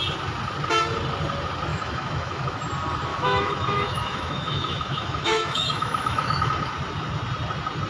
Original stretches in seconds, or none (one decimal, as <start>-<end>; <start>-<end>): 0.0-1.7; 2.6-3.1; 6.5-7.9